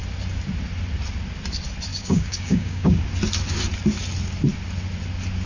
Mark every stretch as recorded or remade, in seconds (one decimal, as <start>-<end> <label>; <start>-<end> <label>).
0.0-1.9 recorded; 1.9-3.0 remade; 3.0-5.5 recorded